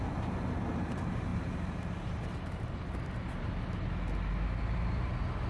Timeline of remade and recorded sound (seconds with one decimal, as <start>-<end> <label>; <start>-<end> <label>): 0.0-1.3 recorded; 1.3-2.7 remade; 2.7-5.5 recorded